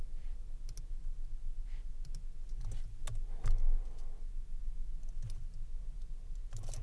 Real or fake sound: real